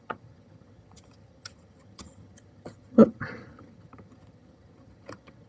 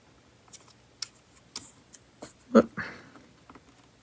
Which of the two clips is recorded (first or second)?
second